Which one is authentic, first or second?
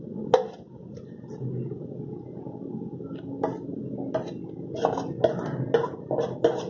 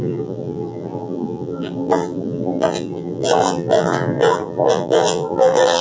first